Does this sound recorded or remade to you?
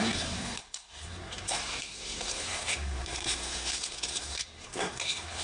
remade